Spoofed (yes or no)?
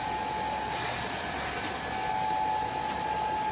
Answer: no